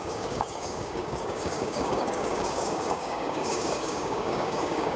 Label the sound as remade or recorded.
remade